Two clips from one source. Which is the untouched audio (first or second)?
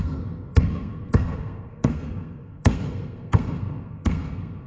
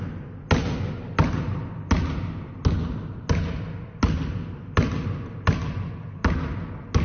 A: second